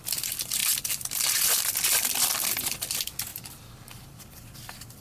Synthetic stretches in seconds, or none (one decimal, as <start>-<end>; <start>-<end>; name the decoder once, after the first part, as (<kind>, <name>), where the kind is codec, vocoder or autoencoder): none